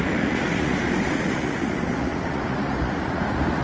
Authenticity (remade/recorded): remade